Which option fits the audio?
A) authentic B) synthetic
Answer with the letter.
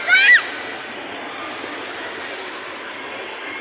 A